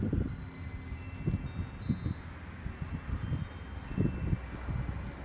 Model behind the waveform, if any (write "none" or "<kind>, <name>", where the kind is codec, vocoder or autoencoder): none